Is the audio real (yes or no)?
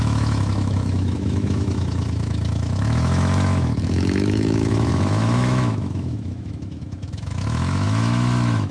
no